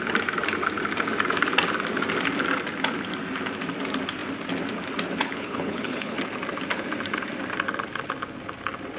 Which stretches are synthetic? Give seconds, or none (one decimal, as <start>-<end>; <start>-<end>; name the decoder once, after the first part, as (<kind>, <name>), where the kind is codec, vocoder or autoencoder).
5.2-6.2 (codec, HILCodec)